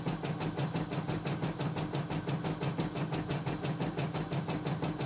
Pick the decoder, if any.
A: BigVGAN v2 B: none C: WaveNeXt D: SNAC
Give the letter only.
B